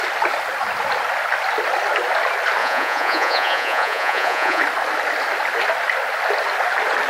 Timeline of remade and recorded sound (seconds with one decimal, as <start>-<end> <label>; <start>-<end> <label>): 0.0-2.6 recorded; 2.6-4.6 remade; 4.6-7.1 recorded